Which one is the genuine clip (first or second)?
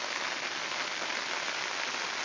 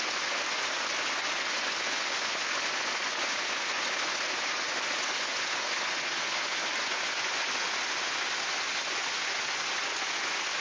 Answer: first